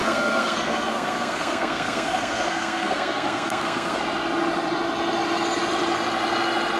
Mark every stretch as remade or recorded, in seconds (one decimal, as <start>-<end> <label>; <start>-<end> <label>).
0.0-4.0 remade; 4.0-6.8 recorded